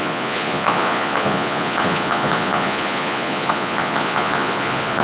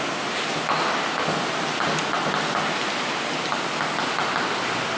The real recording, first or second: second